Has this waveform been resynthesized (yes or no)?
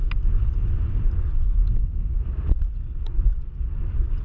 no